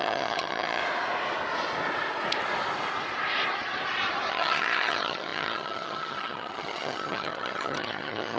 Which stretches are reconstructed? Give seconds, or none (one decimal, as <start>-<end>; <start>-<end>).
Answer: 0.0-0.8; 4.3-8.4